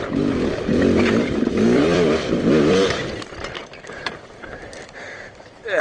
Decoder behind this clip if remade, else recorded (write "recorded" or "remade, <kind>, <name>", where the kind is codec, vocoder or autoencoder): remade, vocoder, BigVGAN v2